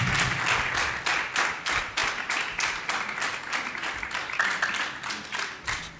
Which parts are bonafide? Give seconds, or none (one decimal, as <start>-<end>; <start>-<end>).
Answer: 0.0-6.0